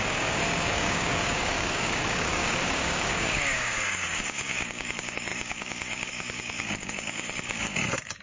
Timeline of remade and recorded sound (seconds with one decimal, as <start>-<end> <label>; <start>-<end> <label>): 0.0-8.2 remade

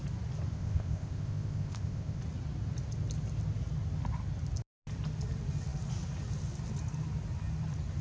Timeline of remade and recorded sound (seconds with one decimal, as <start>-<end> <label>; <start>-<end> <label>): 0.0-0.5 recorded; 0.5-2.2 remade; 2.2-8.0 recorded

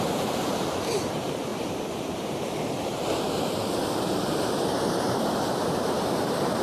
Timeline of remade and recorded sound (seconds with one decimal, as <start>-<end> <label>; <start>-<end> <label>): 0.0-6.6 remade

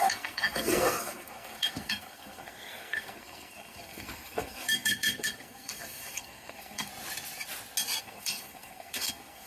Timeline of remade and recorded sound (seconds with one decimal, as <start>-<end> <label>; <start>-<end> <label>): 0.0-6.9 remade; 6.9-8.0 recorded; 8.0-9.5 remade

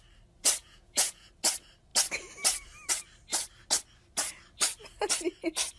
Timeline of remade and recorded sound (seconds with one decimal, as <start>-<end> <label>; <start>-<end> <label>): 0.0-0.6 recorded; 0.6-1.3 remade; 1.3-5.8 recorded

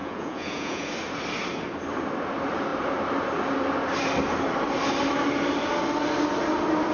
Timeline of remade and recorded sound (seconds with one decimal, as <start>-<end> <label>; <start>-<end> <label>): 0.0-0.9 remade; 0.9-6.9 recorded